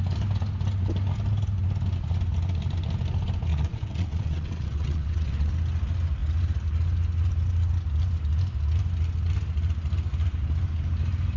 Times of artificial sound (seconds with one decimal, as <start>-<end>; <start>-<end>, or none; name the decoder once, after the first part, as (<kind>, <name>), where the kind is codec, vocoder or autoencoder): 3.5-5.5 (vocoder, WaveNeXt)